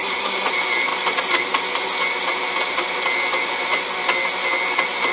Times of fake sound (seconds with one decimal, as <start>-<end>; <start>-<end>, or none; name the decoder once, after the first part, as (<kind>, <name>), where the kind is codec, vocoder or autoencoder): none